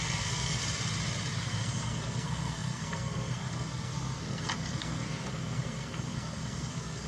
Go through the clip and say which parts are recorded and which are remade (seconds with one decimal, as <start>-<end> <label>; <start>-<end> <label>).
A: 0.0-0.6 remade; 0.6-1.4 recorded; 1.4-7.1 remade